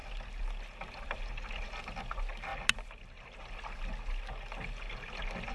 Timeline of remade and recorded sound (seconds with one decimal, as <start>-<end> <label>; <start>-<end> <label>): 0.0-5.5 recorded